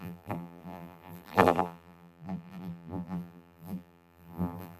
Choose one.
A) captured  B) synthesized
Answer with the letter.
B